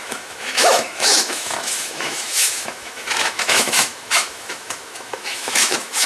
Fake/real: fake